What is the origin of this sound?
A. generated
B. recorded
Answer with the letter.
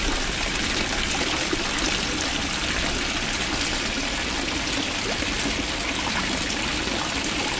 B